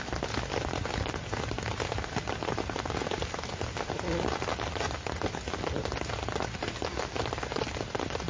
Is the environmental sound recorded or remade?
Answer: recorded